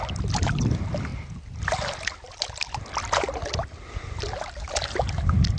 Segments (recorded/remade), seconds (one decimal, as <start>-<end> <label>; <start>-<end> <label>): 0.0-5.6 recorded